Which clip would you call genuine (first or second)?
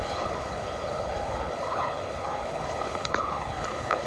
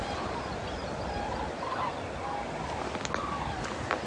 second